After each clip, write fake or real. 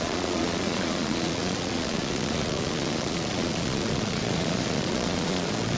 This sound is fake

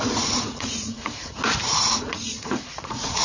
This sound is fake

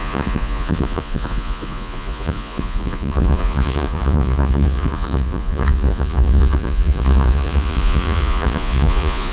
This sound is fake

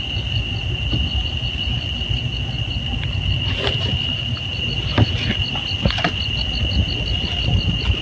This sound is real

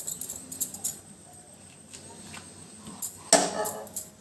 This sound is real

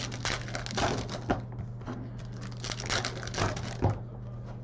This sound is real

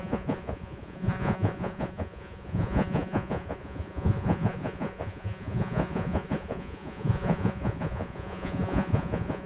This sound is fake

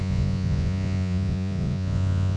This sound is fake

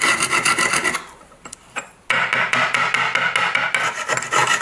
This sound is real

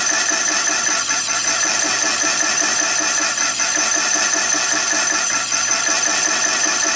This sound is real